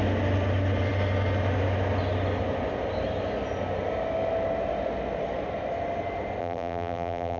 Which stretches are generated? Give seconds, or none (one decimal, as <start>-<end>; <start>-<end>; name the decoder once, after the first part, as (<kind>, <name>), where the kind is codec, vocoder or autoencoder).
6.4-7.4 (vocoder, BigVGAN v2)